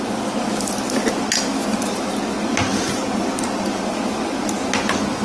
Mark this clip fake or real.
real